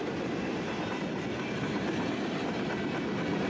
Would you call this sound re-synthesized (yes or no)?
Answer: no